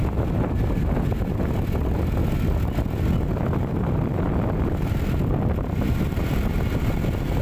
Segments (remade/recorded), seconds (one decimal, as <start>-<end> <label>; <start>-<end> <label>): 0.0-2.2 recorded; 2.2-6.5 remade; 6.5-7.4 recorded